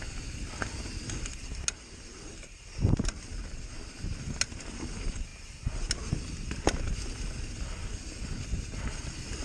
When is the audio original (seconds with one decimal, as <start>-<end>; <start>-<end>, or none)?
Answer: 0.0-9.4